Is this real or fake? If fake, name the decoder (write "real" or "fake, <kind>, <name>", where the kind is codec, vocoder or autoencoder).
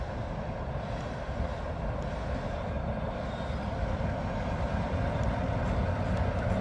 real